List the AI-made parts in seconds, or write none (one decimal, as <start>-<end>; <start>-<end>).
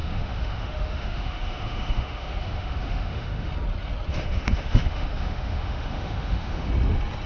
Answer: 0.0-3.5; 4.1-6.7